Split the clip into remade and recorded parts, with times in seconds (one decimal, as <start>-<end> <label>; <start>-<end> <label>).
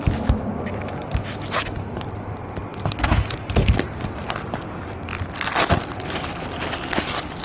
0.0-7.4 recorded